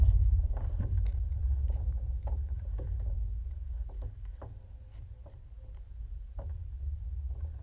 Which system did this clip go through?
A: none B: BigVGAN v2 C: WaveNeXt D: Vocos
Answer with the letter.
B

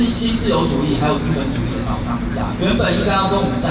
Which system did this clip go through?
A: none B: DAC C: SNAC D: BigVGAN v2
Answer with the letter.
A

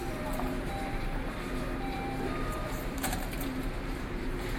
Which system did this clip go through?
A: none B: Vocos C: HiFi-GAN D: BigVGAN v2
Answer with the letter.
D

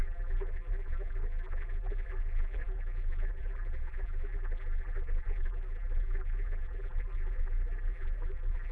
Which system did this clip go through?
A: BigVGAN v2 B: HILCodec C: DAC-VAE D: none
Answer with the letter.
A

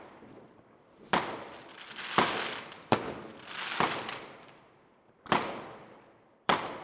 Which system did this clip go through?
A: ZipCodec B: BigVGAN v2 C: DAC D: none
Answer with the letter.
B